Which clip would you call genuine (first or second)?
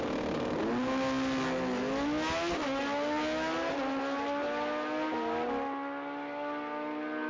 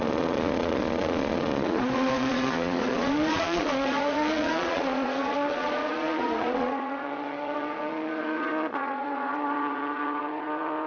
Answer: first